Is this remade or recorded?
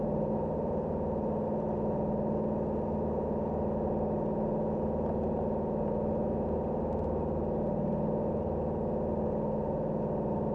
recorded